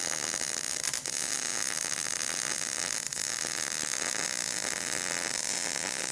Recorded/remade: recorded